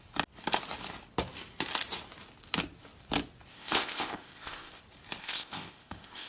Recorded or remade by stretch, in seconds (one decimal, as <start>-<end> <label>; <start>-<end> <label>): 0.0-3.5 recorded; 3.5-4.8 remade; 4.8-5.2 recorded; 5.2-6.3 remade

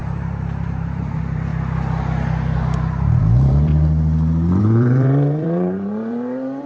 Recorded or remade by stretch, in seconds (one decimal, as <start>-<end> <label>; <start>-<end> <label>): 0.0-1.5 remade; 1.5-3.2 recorded; 3.2-3.7 remade; 3.7-4.6 recorded; 4.6-6.7 remade